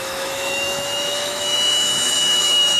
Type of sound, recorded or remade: remade